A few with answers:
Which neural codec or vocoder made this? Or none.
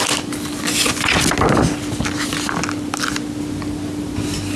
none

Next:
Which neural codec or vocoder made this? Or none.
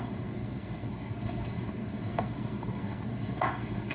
codec, SNAC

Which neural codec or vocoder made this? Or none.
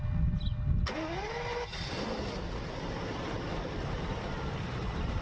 none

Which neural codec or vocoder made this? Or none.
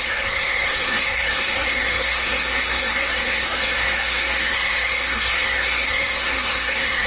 codec, SNAC